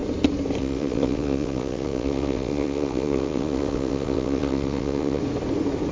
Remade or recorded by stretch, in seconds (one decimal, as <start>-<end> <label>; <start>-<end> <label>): 0.0-0.6 recorded; 0.6-5.2 remade; 5.2-5.9 recorded

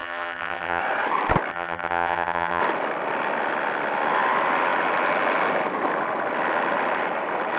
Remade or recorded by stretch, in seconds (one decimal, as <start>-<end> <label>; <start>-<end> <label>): 0.0-0.8 remade; 0.8-1.5 recorded; 1.5-2.6 remade; 2.6-7.6 recorded

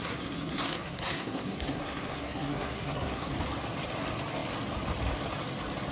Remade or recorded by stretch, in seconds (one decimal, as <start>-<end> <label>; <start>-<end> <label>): 0.0-3.3 remade; 3.3-5.9 recorded

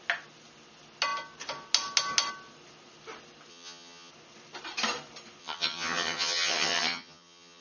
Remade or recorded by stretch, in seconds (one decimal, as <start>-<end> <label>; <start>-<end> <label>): 0.0-3.5 recorded; 3.5-4.1 remade; 4.1-5.4 recorded; 5.4-7.6 remade

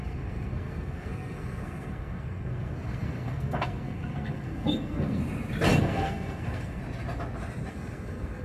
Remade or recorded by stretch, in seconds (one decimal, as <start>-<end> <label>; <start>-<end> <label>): 0.0-5.2 remade; 5.2-5.8 recorded; 5.8-6.8 remade; 6.8-7.7 recorded; 7.7-8.4 remade

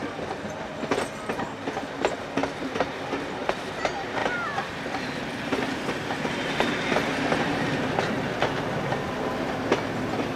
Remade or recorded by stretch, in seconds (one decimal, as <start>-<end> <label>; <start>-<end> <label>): 0.0-0.9 remade; 0.9-4.2 recorded; 4.2-8.4 remade; 8.4-10.4 recorded

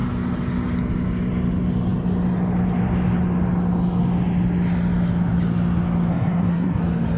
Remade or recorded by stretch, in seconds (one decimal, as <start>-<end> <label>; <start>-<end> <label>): 0.0-6.1 recorded; 6.1-6.8 remade; 6.8-7.2 recorded

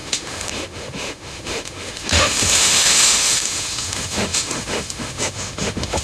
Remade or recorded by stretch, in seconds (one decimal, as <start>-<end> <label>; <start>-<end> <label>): 0.0-6.0 remade